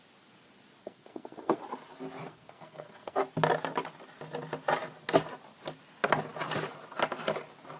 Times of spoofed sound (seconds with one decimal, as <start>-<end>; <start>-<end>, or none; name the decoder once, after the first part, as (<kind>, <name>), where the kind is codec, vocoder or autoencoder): 0.8-1.6 (codec, SNAC); 2.2-3.2